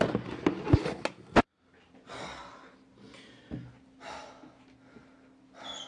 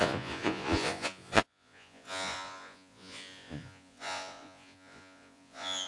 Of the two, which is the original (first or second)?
first